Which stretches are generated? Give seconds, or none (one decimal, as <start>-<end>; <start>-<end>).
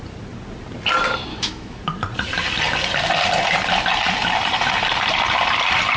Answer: 1.3-1.8